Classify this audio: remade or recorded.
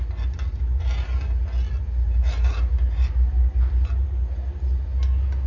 recorded